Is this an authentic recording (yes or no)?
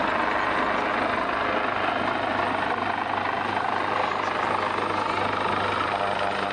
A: yes